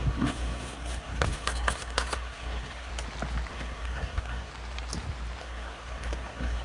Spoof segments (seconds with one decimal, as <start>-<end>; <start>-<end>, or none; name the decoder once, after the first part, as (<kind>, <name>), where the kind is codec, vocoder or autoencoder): 0.0-2.9 (codec, SNAC); 3.5-4.5; 5.4-6.6